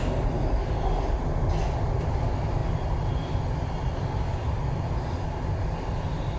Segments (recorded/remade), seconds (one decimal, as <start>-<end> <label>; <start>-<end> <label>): 0.0-6.4 recorded